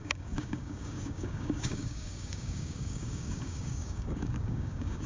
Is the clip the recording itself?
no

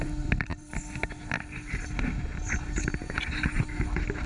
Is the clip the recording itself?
yes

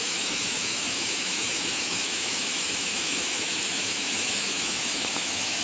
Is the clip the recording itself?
no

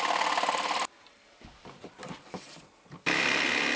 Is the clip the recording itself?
yes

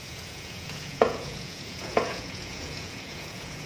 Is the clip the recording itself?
no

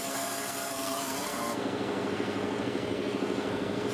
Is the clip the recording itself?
no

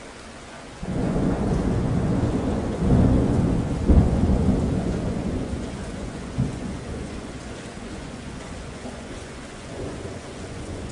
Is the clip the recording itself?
no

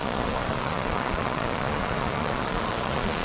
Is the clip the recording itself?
no